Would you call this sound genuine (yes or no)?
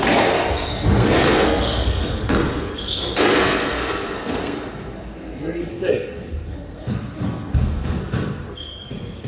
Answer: no